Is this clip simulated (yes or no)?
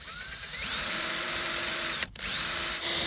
yes